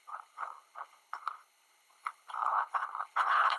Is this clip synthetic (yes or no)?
yes